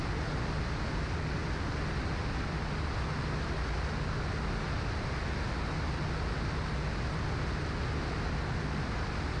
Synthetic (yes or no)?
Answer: no